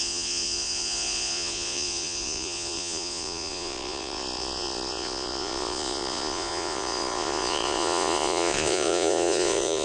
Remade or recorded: remade